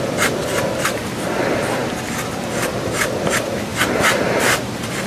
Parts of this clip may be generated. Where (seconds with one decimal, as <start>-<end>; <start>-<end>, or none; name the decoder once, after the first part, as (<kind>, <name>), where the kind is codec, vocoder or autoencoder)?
none